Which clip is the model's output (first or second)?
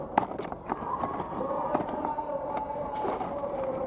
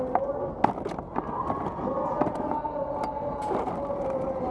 first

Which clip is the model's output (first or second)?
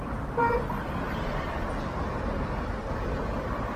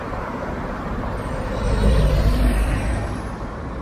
second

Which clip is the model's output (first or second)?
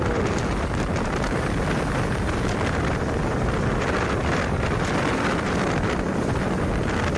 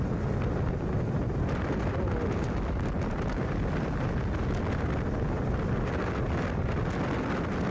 first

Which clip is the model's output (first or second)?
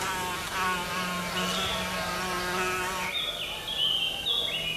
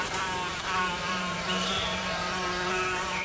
second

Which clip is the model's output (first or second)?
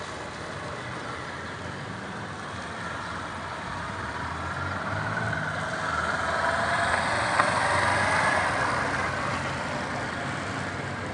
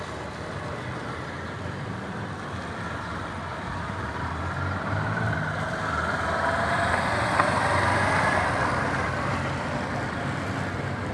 second